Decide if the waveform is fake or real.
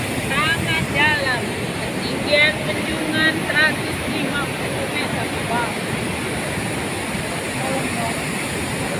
real